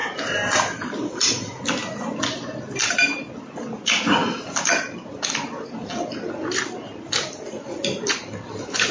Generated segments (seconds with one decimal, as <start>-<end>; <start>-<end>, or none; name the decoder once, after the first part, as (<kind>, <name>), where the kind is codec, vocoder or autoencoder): 0.0-1.3 (vocoder, BigVGAN v2)